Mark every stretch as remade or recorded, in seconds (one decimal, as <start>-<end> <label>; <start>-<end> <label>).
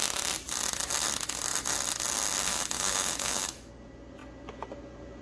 0.0-2.5 recorded; 2.5-3.7 remade; 3.7-5.2 recorded